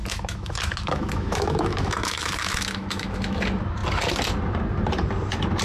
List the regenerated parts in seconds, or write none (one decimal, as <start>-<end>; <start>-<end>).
0.0-3.4